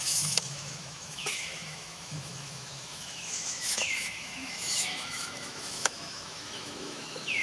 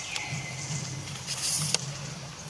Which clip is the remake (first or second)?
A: first